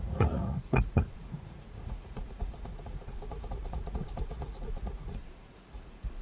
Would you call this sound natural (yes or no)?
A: no